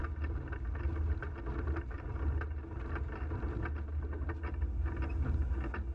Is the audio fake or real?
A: real